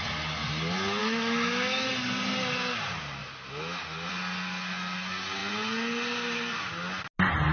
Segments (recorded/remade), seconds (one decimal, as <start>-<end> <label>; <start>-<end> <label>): 0.0-1.0 recorded; 1.0-1.9 remade; 1.9-7.5 recorded